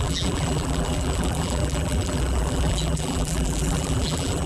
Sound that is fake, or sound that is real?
fake